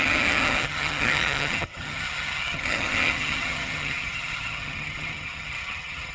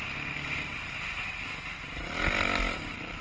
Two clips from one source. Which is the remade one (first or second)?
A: first